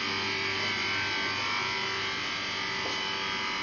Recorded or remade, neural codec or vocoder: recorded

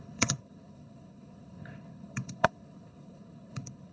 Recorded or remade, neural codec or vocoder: remade, codec, HILCodec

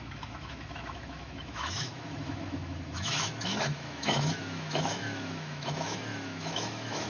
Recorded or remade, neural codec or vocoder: remade, autoencoder, DAC-VAE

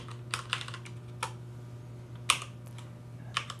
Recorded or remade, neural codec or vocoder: recorded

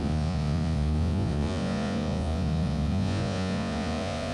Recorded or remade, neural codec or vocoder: remade, vocoder, Vocos